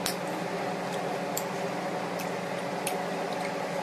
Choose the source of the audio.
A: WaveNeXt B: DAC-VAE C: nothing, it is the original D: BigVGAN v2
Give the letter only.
C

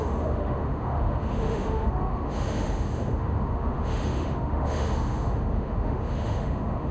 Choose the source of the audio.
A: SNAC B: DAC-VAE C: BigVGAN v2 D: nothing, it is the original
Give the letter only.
B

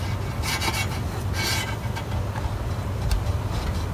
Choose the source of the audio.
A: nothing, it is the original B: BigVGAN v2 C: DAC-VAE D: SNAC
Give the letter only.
A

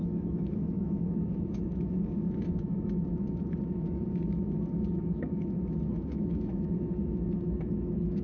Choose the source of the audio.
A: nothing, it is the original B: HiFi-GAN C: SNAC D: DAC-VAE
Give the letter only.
D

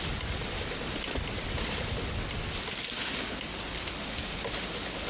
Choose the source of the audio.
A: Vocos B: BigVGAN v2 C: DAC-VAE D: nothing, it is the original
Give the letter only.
D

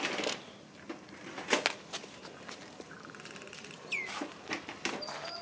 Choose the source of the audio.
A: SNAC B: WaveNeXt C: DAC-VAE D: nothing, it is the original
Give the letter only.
D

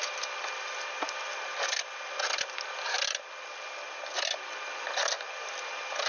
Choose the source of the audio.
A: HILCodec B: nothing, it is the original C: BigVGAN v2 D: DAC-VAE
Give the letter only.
B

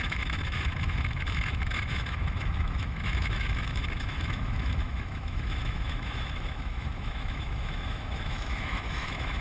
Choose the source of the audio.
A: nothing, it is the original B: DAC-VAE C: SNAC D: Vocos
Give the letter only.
B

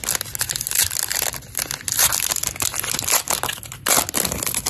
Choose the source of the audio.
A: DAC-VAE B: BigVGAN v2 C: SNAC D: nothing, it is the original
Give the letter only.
D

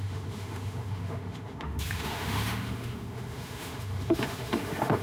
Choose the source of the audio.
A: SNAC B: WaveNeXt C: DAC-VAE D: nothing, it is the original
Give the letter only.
C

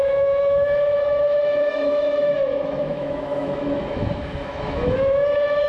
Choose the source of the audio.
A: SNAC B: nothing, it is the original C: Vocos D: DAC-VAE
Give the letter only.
D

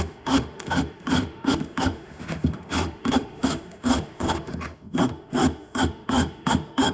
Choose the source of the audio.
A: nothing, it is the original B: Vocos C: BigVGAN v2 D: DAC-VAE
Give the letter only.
D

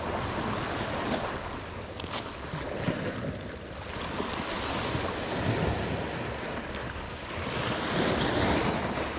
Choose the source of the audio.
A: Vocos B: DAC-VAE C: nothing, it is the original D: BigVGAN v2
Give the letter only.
C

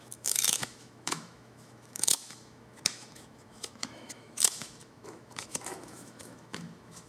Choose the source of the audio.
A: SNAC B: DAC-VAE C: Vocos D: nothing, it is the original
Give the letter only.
B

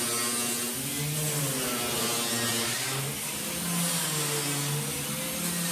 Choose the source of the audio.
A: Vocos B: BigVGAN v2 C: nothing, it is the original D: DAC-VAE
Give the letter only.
C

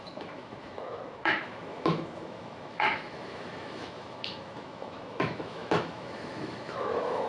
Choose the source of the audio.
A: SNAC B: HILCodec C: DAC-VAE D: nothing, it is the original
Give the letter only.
C